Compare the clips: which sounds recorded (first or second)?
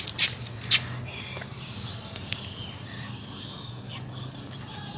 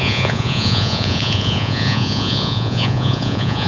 first